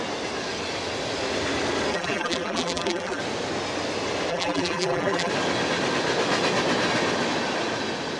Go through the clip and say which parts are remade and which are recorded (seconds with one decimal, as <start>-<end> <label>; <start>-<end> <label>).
0.0-1.9 recorded; 1.9-3.2 remade; 3.2-4.3 recorded; 4.3-5.3 remade; 5.3-8.2 recorded